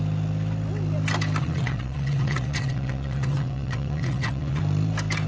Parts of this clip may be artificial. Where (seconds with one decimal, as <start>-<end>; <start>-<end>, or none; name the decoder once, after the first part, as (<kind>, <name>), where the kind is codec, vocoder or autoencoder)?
1.4-4.6 (vocoder, WaveNeXt)

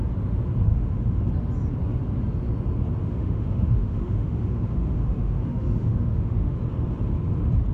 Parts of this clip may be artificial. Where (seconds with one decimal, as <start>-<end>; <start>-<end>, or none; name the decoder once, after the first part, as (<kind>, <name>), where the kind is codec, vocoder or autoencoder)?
0.7-1.2 (autoencoder, DAC-VAE); 3.0-6.6

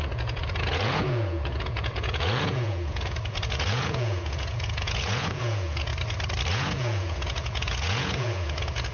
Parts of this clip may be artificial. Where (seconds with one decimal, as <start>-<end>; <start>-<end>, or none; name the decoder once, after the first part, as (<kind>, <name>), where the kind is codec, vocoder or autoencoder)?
0.0-5.9 (vocoder, Vocos); 6.5-8.9